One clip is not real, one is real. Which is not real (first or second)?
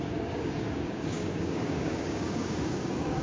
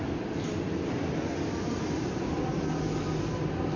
first